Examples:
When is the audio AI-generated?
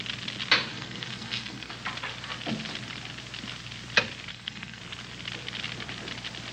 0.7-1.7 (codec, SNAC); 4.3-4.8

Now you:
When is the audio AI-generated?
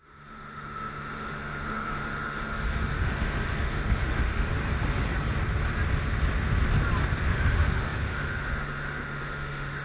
0.0-4.5 (autoencoder, DAC-VAE); 7.2-9.8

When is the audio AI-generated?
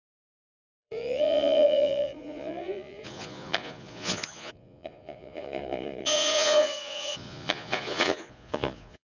0.0-9.2 (vocoder, Vocos)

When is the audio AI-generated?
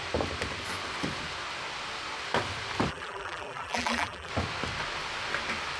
2.9-4.3 (vocoder, BigVGAN v2)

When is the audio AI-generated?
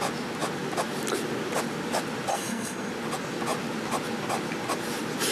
2.3-2.9 (codec, SNAC)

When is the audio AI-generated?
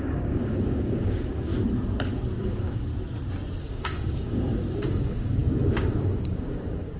0.0-1.5 (codec, DAC); 2.4-2.9; 3.6-7.0